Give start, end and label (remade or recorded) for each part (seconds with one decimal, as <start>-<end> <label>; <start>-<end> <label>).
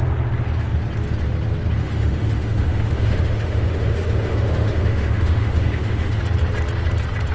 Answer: 0.0-1.8 recorded; 1.8-6.2 remade; 6.2-7.3 recorded